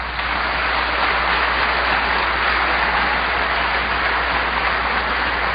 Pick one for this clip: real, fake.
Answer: real